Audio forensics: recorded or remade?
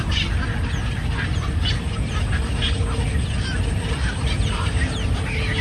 recorded